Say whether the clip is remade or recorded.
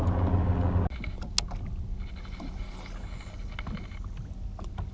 recorded